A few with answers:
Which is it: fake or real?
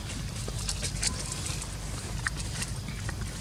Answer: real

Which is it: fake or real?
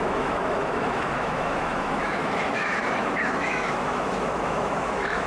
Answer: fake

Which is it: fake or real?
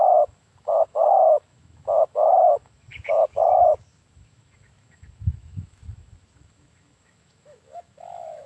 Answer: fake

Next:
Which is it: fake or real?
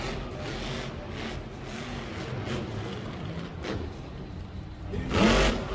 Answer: real